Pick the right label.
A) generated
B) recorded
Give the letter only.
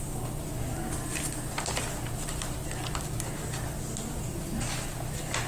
B